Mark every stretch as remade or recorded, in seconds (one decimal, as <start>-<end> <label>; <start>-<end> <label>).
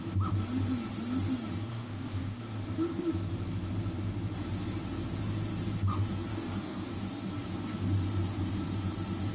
0.0-1.7 recorded; 1.7-2.4 remade; 2.4-6.3 recorded; 6.3-6.9 remade; 6.9-9.3 recorded